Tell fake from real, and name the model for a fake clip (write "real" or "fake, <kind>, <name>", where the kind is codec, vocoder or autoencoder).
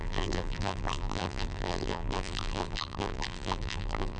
fake, vocoder, BigVGAN v2